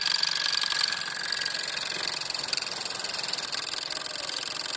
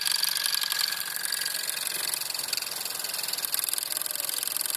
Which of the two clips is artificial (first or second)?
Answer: first